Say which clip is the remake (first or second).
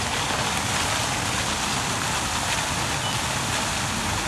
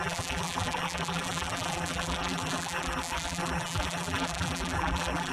second